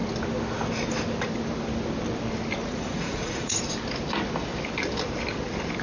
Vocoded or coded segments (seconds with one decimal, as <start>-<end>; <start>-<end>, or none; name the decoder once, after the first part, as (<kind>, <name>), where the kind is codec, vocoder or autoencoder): 2.6-3.6 (vocoder, Vocos)